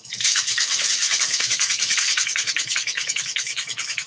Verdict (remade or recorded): remade